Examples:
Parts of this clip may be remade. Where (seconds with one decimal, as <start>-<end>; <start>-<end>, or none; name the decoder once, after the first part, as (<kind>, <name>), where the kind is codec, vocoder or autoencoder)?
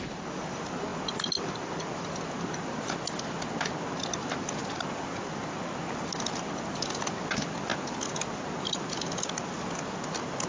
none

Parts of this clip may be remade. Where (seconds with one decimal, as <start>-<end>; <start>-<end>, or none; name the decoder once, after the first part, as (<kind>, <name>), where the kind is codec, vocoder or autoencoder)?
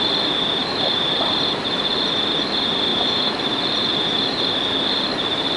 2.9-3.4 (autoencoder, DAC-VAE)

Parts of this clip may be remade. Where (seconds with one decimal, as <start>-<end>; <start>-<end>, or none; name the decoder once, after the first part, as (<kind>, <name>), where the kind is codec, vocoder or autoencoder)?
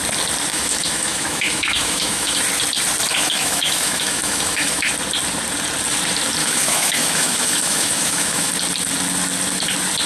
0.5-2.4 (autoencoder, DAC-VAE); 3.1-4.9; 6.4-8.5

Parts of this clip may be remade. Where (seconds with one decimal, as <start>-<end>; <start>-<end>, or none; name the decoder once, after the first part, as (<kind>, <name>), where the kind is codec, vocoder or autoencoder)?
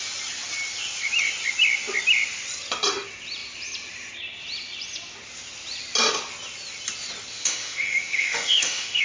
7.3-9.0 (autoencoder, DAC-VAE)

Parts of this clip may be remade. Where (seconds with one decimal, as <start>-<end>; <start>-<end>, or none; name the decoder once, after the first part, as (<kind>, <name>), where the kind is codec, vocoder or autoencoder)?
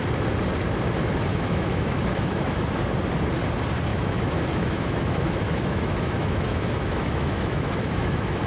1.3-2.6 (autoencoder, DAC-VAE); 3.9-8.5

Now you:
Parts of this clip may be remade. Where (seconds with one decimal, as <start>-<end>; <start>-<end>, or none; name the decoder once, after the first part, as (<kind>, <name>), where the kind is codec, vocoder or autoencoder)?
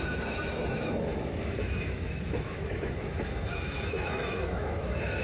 0.0-5.2 (autoencoder, DAC-VAE)